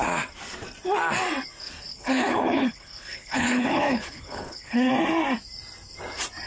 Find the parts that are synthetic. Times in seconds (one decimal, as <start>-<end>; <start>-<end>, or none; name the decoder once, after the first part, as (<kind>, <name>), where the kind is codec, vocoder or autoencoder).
1.9-4.9 (codec, HILCodec)

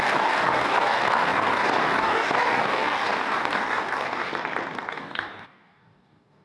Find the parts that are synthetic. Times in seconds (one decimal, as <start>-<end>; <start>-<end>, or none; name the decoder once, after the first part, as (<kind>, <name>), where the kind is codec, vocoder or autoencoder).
0.0-4.3 (codec, DAC); 4.9-6.4

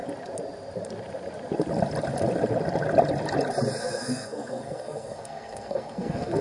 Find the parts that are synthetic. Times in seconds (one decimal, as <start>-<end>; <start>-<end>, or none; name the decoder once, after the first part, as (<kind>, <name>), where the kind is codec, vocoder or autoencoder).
3.8-6.4 (codec, SNAC)

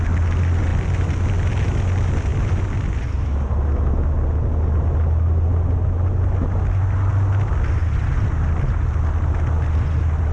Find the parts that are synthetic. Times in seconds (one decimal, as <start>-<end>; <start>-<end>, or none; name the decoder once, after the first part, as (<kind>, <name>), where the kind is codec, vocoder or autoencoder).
2.3-3.5 (vocoder, BigVGAN v2)